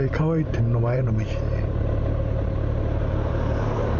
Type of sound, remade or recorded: remade